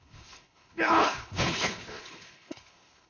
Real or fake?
fake